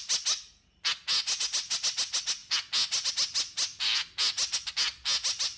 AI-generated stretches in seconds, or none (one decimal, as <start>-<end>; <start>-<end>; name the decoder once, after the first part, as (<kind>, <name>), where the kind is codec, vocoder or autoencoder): none